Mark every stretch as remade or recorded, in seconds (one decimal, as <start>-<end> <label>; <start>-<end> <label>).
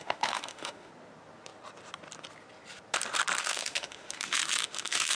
0.0-0.9 remade; 0.9-3.4 recorded; 3.4-5.1 remade